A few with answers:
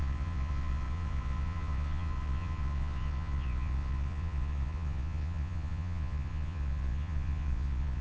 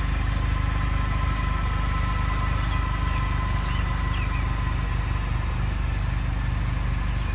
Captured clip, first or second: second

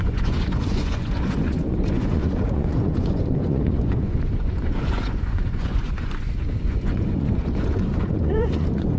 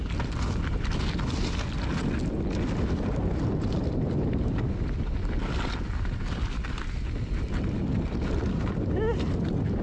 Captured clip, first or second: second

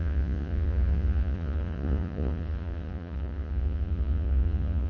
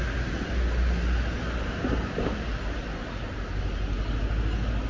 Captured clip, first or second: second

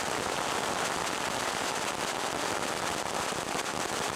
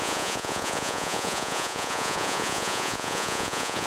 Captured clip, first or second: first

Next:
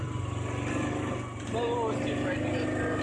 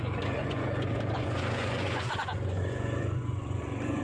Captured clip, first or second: first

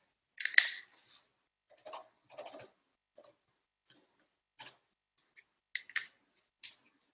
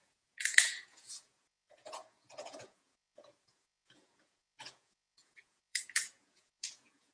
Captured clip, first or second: first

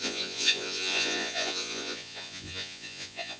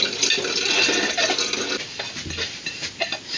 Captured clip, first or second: second